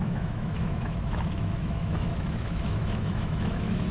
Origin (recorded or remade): remade